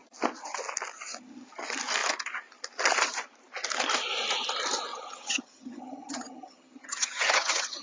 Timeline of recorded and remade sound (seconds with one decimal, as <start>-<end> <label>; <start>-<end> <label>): 0.0-4.9 recorded; 4.9-7.8 remade